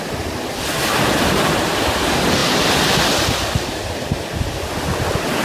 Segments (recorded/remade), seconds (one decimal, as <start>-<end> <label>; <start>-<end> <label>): 0.0-5.4 recorded